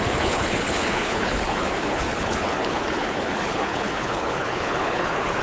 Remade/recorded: remade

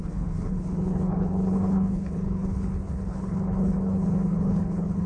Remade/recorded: remade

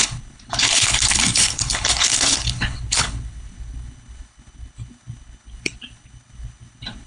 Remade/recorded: remade